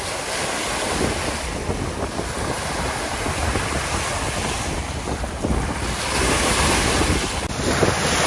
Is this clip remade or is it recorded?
recorded